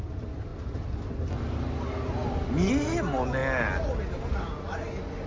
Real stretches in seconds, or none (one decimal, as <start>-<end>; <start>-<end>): 0.0-5.3